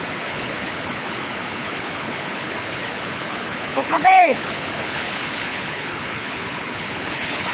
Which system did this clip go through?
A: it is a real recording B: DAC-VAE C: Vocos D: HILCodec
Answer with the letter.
D